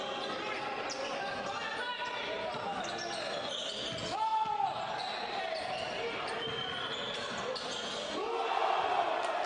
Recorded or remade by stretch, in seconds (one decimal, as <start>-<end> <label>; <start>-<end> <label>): 0.0-9.5 recorded